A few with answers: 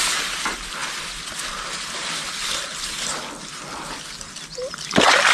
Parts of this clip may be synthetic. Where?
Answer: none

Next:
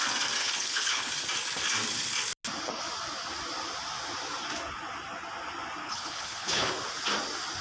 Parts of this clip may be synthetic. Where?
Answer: 0.4-1.1 (codec, HILCodec); 5.8-6.7

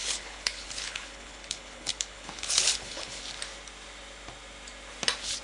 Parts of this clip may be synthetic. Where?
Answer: 0.0-3.2 (codec, HILCodec)

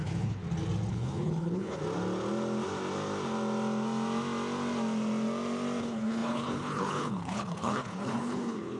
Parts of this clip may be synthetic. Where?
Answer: 0.0-0.4 (codec, HILCodec); 0.9-1.8; 5.8-8.8

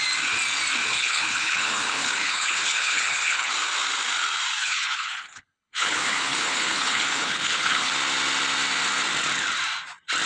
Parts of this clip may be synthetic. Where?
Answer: 0.9-3.5 (codec, HILCodec); 4.6-7.9

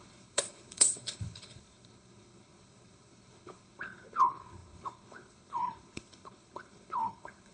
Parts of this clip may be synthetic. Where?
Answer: 0.0-7.5 (codec, HILCodec)

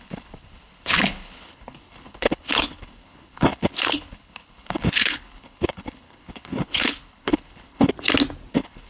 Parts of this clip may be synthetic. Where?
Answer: 0.0-7.9 (codec, HILCodec); 8.5-8.9